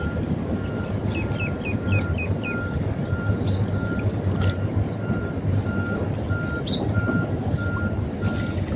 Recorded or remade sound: recorded